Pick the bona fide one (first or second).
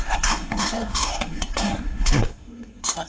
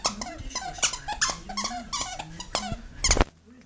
second